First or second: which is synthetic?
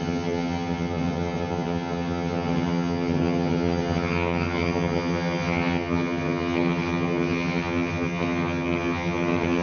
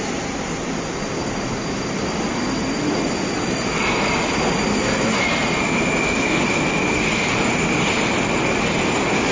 first